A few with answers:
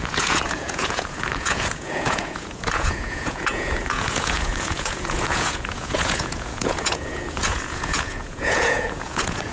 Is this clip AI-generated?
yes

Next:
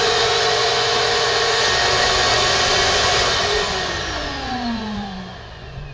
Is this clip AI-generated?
yes